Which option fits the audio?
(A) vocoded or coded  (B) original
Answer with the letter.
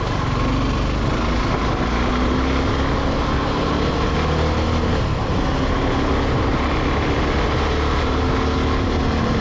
B